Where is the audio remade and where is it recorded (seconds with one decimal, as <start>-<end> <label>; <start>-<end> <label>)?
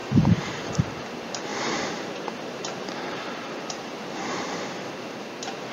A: 0.0-0.8 remade; 0.8-1.5 recorded; 1.5-4.9 remade; 4.9-5.7 recorded